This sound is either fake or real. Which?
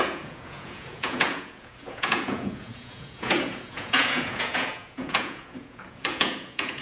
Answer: fake